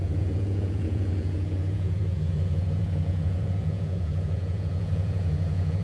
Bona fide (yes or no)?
no